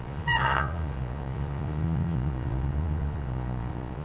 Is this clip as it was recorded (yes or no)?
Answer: no